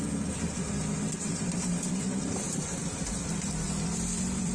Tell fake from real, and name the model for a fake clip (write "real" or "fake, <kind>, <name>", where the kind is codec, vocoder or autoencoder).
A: fake, vocoder, BigVGAN v2